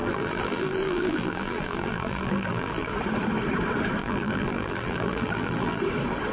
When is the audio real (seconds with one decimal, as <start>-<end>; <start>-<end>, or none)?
2.9-4.0; 5.8-6.3